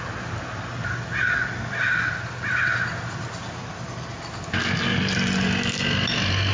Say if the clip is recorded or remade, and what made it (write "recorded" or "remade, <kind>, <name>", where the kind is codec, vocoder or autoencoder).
recorded